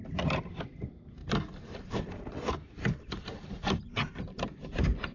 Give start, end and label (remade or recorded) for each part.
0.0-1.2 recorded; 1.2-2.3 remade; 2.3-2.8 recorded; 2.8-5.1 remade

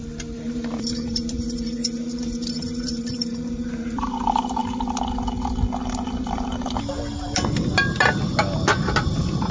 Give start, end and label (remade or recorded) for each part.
0.0-4.6 remade; 4.6-5.8 recorded; 5.8-6.9 remade; 6.9-9.1 recorded; 9.1-9.5 remade

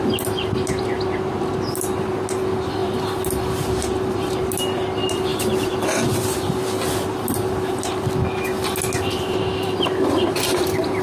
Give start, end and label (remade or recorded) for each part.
0.0-11.0 recorded

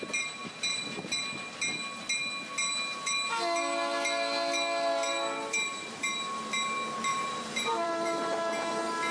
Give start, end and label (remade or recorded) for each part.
0.0-7.1 recorded; 7.1-8.5 remade; 8.5-9.1 recorded